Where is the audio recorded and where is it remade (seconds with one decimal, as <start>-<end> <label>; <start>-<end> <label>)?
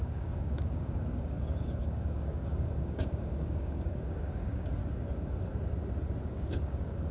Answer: 0.0-4.8 remade; 4.8-6.2 recorded; 6.2-7.1 remade